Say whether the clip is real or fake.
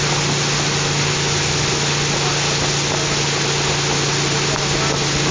real